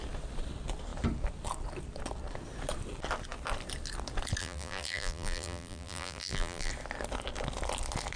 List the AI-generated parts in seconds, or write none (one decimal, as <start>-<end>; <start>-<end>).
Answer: 4.4-6.7